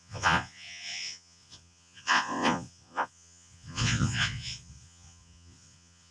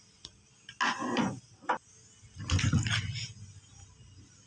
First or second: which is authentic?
second